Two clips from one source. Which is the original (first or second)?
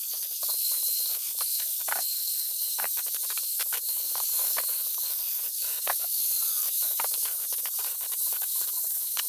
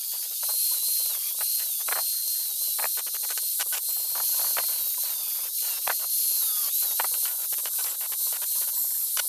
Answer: second